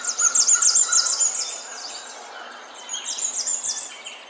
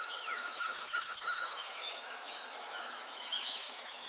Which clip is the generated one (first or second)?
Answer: second